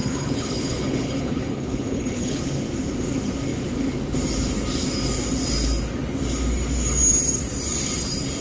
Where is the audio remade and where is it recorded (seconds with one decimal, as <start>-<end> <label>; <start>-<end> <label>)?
0.0-2.4 remade; 2.4-8.4 recorded